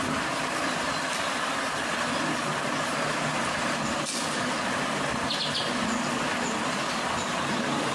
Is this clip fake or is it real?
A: real